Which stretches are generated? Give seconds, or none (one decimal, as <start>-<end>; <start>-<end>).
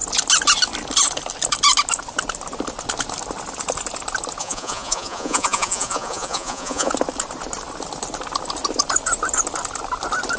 4.4-6.9